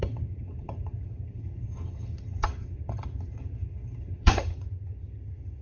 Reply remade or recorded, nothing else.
remade